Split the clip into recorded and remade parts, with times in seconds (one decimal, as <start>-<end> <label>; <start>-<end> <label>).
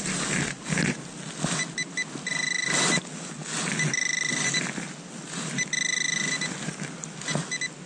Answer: 0.0-7.9 recorded